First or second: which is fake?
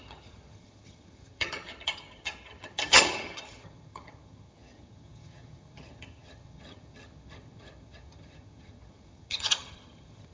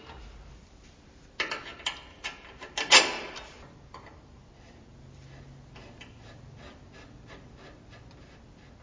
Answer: first